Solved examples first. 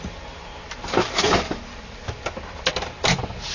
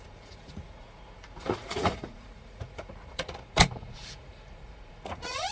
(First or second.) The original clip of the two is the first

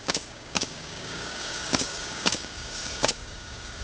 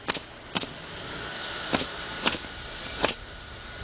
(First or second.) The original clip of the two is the second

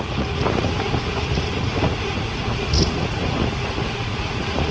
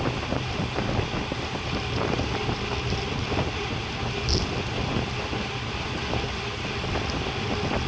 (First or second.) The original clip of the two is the second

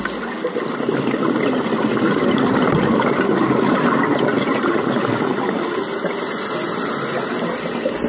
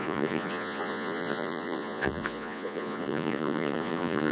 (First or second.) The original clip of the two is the first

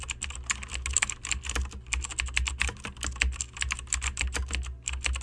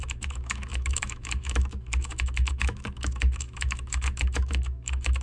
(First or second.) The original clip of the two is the first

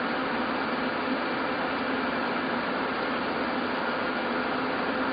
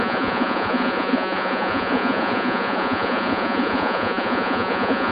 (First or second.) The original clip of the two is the first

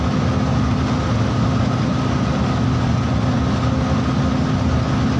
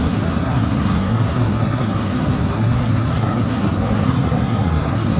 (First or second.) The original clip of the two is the first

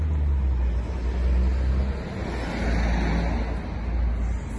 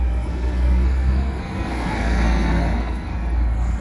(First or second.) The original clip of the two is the first